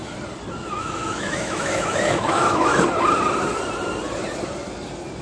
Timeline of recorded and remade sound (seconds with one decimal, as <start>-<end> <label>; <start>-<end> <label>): 0.0-0.8 recorded; 0.8-2.7 remade; 2.7-5.2 recorded